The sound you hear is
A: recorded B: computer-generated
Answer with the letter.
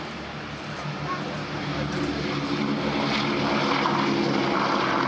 A